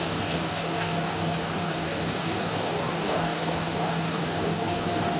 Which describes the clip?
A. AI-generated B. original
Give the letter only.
A